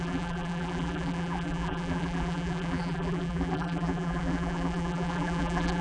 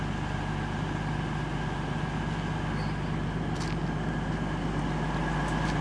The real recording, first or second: second